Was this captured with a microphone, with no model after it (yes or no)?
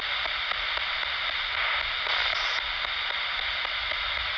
yes